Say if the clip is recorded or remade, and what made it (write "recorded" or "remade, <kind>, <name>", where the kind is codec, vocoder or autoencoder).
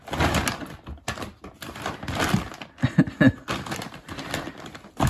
recorded